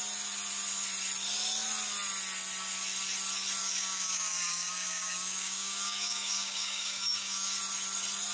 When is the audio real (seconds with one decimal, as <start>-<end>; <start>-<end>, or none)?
0.0-3.6; 7.6-8.3